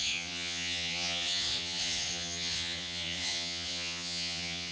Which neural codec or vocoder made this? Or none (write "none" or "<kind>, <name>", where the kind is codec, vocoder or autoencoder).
vocoder, Vocos